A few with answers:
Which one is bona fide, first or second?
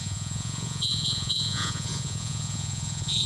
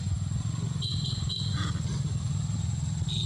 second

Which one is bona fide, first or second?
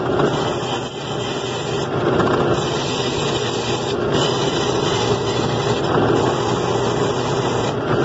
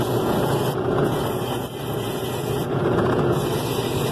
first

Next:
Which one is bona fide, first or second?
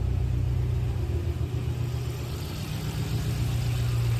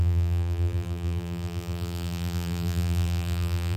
first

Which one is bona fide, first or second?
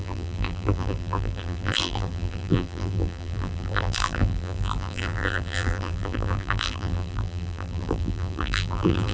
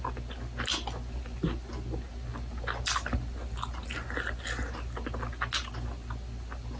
second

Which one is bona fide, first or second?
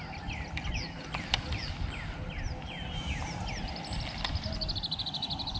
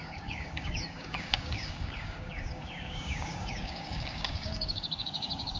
first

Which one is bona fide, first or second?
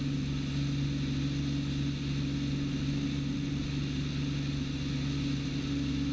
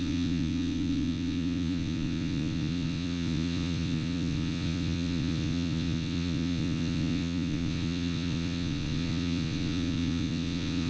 first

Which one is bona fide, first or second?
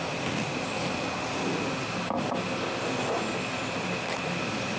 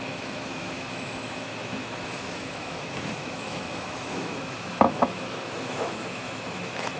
first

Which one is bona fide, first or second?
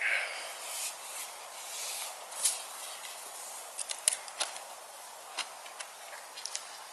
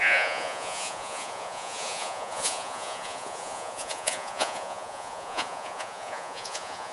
first